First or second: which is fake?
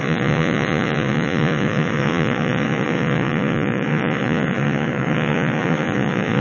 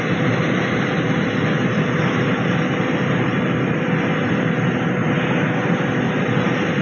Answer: first